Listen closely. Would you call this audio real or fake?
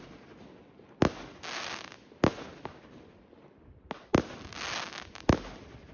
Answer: real